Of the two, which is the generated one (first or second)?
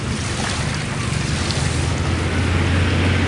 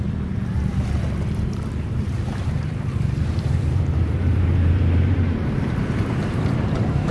second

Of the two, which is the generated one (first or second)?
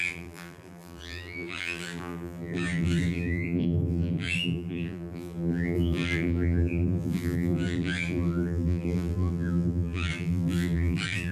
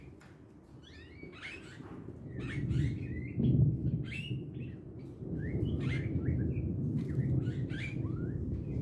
first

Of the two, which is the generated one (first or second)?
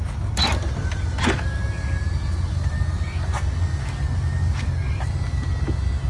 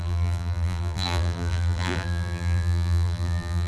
second